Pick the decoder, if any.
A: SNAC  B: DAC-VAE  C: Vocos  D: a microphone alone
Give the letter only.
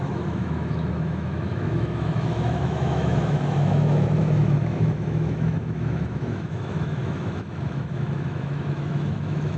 B